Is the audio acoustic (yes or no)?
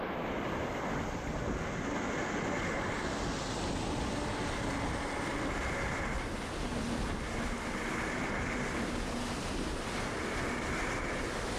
yes